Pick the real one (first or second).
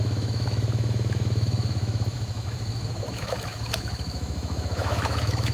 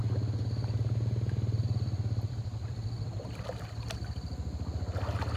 second